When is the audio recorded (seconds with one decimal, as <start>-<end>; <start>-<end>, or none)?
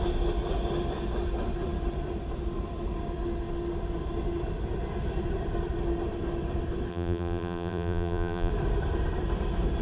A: 0.0-6.9; 8.5-9.8